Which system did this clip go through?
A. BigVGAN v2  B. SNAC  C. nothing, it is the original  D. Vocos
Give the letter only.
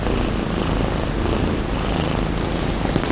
C